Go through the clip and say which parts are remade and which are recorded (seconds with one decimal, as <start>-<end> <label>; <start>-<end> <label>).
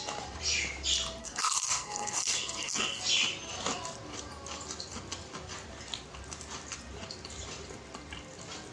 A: 0.0-1.2 recorded; 1.2-3.0 remade; 3.0-8.7 recorded